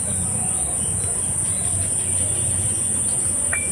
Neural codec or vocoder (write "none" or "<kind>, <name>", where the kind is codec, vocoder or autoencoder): vocoder, Vocos